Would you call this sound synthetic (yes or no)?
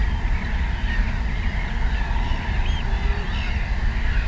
no